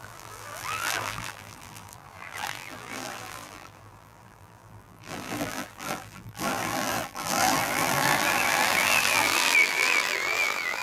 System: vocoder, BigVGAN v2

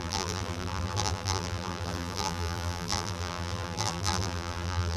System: vocoder, BigVGAN v2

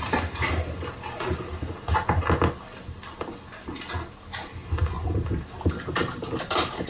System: none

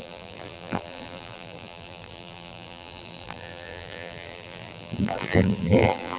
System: vocoder, BigVGAN v2